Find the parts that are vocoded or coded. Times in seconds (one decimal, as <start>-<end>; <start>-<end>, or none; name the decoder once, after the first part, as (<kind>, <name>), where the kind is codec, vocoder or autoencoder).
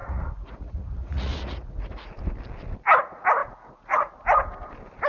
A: 0.0-2.1 (vocoder, Vocos); 3.4-4.1